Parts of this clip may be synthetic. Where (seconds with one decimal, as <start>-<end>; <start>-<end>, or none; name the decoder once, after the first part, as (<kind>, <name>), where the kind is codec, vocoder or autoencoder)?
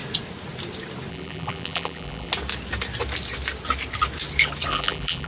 1.1-2.3 (vocoder, BigVGAN v2); 4.7-5.3